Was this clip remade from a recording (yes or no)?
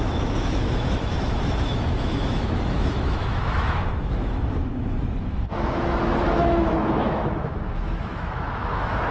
yes